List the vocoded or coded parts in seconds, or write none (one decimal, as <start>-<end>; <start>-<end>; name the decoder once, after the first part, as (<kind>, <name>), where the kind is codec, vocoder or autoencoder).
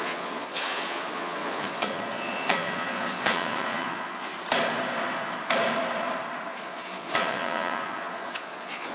0.0-4.3 (vocoder, Vocos); 6.6-8.9